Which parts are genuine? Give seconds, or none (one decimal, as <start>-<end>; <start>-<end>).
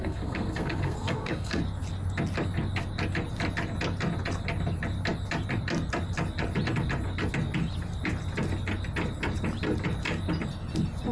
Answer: 1.6-11.1